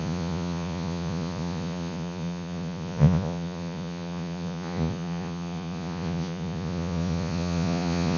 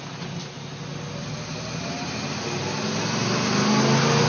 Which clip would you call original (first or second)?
second